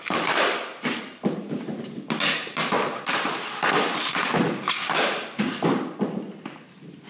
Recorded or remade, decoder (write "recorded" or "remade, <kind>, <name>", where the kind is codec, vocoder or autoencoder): recorded